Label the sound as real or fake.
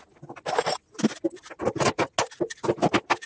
real